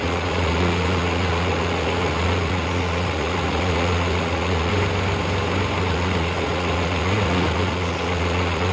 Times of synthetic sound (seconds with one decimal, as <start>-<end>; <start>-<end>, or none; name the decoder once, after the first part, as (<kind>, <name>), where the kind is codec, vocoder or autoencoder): 0.0-4.7 (vocoder, Vocos); 5.8-8.7